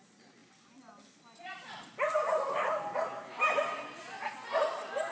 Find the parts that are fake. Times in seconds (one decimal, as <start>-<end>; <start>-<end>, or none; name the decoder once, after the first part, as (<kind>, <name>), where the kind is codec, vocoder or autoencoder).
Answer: none